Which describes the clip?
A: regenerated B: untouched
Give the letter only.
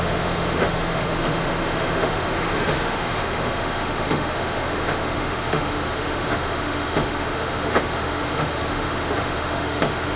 A